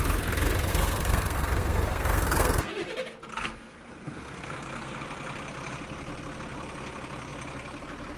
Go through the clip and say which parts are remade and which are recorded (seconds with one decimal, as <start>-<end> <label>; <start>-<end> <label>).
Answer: 0.0-0.7 recorded; 0.7-2.7 remade; 2.7-3.3 recorded; 3.3-5.0 remade; 5.0-8.2 recorded